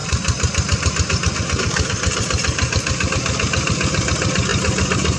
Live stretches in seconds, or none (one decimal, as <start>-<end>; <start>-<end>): 0.0-5.2